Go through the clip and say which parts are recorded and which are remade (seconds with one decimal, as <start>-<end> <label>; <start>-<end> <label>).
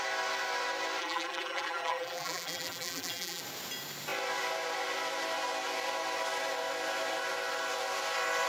0.0-1.0 recorded; 1.0-3.4 remade; 3.4-8.5 recorded